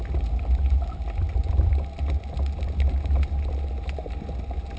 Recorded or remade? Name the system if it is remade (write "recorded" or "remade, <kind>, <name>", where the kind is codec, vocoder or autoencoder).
recorded